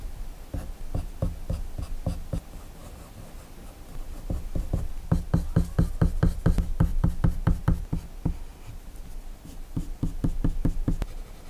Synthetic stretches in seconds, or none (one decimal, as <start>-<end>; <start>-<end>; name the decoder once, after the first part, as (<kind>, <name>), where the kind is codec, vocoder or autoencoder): 2.8-3.4 (vocoder, BigVGAN v2); 3.9-4.9; 6.9-7.6; 8.5-9.1